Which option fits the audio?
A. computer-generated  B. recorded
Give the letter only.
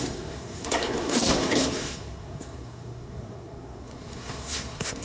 A